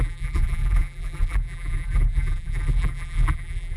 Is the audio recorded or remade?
remade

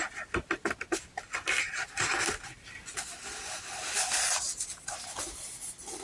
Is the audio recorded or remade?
recorded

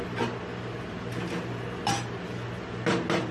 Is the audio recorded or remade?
recorded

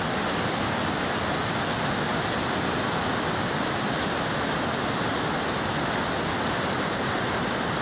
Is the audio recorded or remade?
recorded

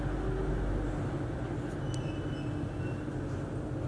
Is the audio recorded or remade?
recorded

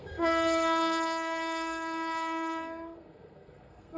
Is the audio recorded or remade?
remade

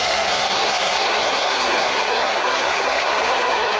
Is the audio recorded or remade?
remade